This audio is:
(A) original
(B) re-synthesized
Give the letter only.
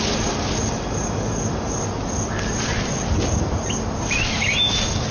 A